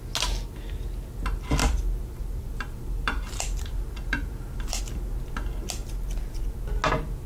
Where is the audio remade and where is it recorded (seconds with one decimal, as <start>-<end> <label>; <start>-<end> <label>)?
0.0-1.6 recorded; 1.6-4.8 remade; 4.8-7.3 recorded